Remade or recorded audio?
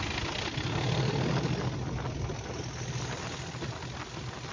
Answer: recorded